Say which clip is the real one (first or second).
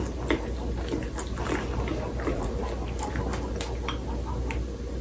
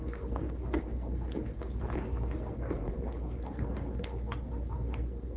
first